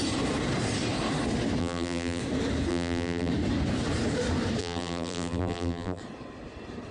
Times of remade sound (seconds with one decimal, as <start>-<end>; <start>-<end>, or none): 1.6-2.2; 2.7-3.3; 4.6-6.0